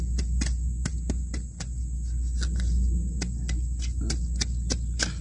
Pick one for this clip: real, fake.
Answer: real